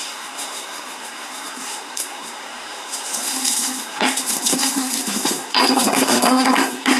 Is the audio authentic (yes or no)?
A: no